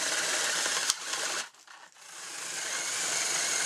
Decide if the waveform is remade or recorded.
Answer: recorded